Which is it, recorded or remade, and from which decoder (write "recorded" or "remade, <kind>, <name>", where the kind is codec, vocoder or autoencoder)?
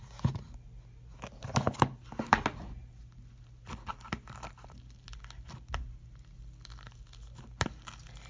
recorded